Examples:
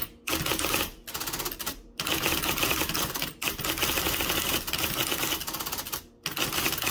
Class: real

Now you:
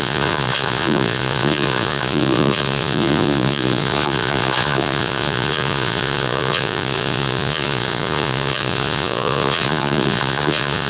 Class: fake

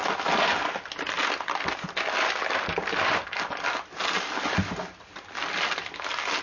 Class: real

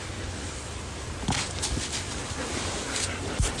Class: real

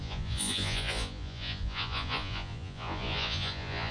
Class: fake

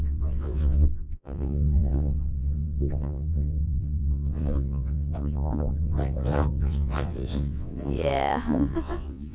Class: fake